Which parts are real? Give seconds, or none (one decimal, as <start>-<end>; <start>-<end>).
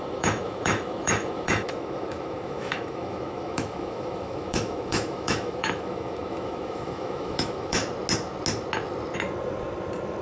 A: 7.8-10.2